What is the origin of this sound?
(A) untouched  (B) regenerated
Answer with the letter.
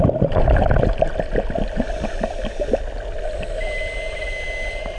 A